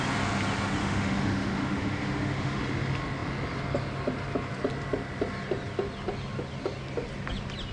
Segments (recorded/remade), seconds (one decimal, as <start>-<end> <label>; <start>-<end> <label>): 0.0-0.8 recorded; 0.8-2.6 remade; 2.6-7.7 recorded